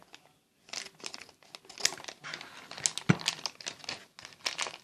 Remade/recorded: recorded